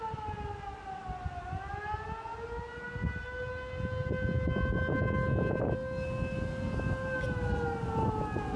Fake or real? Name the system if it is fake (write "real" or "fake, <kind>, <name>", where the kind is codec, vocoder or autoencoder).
real